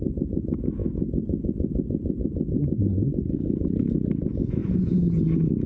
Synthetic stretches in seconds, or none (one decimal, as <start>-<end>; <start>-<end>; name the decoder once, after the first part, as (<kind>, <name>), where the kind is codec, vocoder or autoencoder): 3.2-3.7 (codec, DAC)